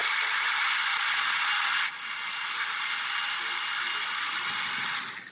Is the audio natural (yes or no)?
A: yes